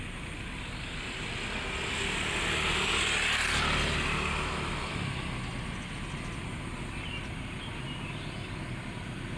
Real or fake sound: real